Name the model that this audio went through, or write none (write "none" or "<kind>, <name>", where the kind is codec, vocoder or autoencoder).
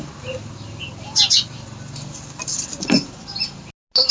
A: none